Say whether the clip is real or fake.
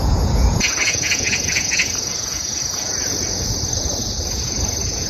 fake